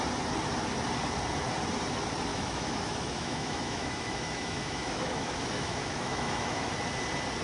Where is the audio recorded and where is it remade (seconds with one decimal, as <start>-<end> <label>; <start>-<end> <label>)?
0.0-2.3 recorded; 2.3-6.7 remade; 6.7-7.4 recorded